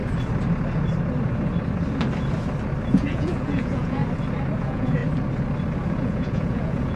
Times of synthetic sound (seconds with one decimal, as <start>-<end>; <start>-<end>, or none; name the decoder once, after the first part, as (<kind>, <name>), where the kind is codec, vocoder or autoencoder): 2.9-4.0 (vocoder, Vocos); 4.6-5.0; 5.9-7.0